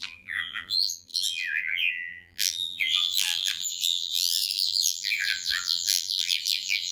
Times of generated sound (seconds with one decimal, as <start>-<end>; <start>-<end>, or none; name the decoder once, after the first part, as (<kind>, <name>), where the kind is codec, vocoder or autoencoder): 0.0-6.9 (vocoder, BigVGAN v2)